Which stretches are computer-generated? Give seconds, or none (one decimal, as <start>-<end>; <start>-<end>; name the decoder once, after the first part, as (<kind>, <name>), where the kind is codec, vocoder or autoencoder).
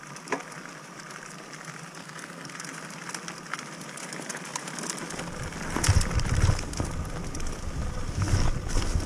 2.0-2.5 (codec, SNAC)